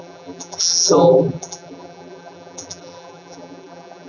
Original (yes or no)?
no